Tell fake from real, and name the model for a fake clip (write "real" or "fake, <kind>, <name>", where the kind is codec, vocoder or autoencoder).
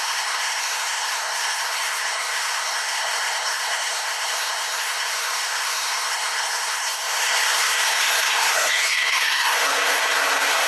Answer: fake, codec, SNAC